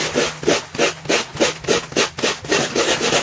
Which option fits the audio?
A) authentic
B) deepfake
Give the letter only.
A